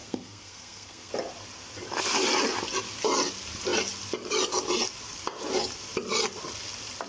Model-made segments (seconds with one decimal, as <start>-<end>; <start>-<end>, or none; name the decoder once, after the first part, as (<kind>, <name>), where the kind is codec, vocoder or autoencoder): 0.0-1.1 (codec, SNAC)